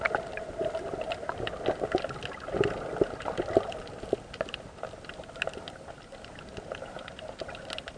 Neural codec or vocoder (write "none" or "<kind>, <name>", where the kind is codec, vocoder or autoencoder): none